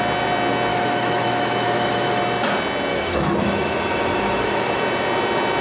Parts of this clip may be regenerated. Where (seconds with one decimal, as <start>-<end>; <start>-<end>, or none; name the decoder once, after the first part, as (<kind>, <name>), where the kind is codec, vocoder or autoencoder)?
0.7-2.2 (autoencoder, DAC-VAE); 2.9-4.8

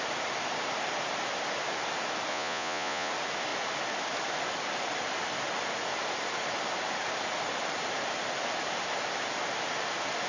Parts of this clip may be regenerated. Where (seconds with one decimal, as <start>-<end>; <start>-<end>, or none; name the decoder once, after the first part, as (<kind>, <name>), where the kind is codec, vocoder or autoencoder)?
2.3-3.1 (vocoder, Vocos)

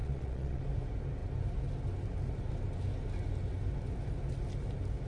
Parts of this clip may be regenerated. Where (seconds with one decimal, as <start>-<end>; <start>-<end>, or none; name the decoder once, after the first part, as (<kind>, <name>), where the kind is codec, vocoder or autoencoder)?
0.0-0.6 (vocoder, Vocos)